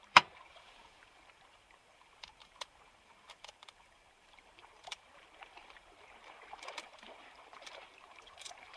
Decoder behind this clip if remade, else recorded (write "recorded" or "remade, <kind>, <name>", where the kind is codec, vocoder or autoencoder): remade, vocoder, BigVGAN v2